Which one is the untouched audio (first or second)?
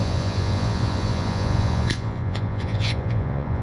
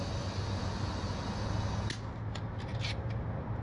second